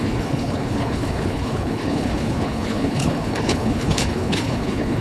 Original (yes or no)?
no